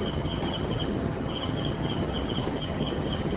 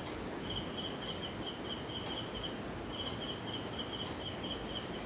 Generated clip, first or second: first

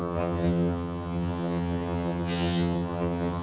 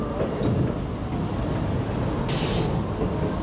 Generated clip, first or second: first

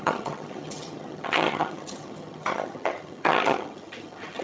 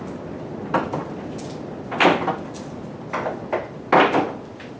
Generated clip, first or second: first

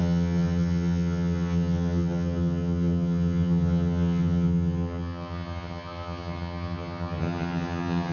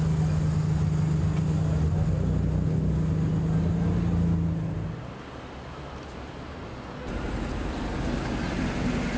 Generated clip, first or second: first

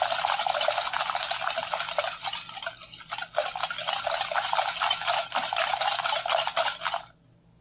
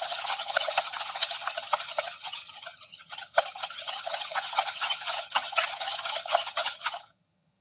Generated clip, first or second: second